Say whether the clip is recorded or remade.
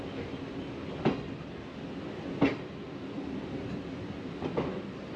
recorded